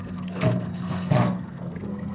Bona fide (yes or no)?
no